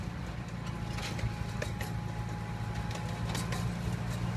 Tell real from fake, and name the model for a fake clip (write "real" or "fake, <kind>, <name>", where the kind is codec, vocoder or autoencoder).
real